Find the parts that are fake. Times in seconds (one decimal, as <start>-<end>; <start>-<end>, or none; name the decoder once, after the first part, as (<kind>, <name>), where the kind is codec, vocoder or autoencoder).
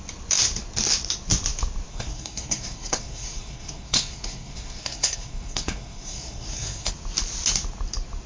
1.9-6.9 (codec, SNAC)